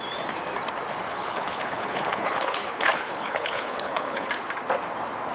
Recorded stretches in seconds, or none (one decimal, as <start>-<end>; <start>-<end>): 0.0-1.1; 4.3-5.3